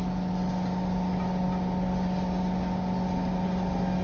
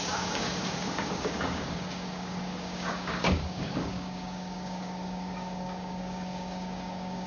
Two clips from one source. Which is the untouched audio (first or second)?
first